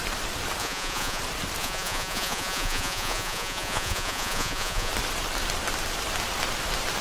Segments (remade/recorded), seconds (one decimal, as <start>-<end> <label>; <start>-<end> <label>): 0.0-0.6 recorded; 0.6-1.2 remade; 1.2-1.6 recorded; 1.6-4.9 remade; 4.9-7.0 recorded